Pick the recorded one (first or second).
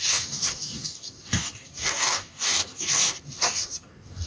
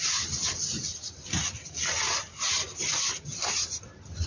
second